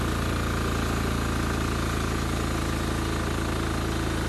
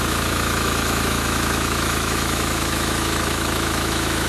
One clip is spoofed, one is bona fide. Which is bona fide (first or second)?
first